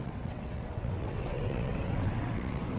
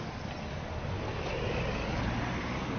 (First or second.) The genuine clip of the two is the second